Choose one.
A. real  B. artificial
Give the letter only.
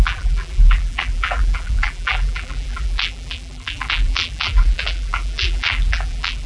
B